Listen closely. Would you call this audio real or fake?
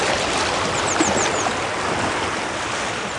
real